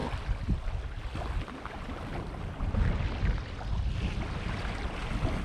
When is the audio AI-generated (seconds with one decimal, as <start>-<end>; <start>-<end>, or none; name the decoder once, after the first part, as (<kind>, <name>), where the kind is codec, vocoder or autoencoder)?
none